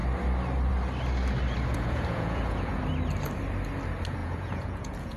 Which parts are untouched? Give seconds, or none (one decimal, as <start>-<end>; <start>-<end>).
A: 0.0-1.7; 2.8-4.2